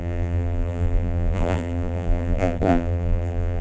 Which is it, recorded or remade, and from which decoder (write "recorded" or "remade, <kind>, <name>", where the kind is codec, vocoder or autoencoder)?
remade, vocoder, BigVGAN v2